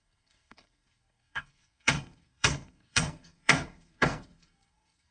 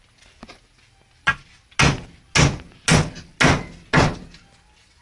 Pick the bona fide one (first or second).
second